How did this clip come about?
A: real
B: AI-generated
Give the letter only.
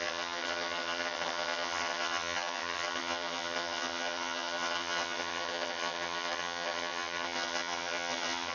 B